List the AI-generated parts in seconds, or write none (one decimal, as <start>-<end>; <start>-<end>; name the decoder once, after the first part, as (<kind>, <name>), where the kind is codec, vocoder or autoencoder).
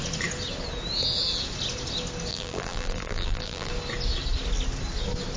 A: 2.3-3.7 (vocoder, BigVGAN v2)